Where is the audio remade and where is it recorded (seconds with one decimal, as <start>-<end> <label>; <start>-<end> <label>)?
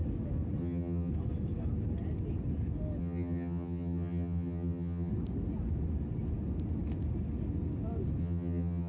0.0-0.6 recorded; 0.6-1.1 remade; 1.1-3.0 recorded; 3.0-5.1 remade; 5.1-8.2 recorded; 8.2-8.9 remade